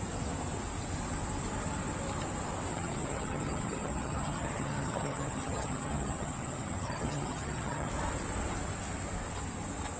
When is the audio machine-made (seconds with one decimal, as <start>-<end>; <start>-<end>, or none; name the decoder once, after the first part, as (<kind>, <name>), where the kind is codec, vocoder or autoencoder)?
2.7-7.9 (vocoder, HiFi-GAN)